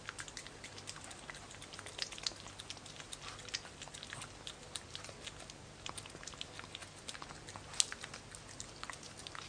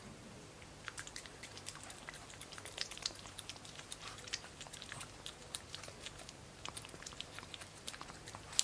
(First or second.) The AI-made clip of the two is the second